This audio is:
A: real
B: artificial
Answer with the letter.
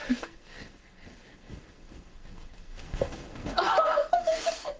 B